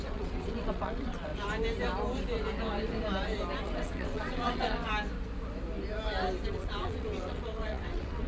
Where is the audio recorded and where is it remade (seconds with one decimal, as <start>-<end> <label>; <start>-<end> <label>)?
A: 0.0-1.3 remade; 1.3-3.6 recorded; 3.6-4.9 remade; 4.9-6.5 recorded; 6.5-8.3 remade